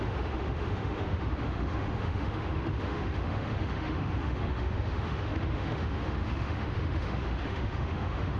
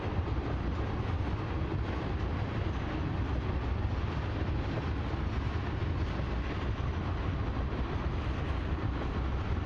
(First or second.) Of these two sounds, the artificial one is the first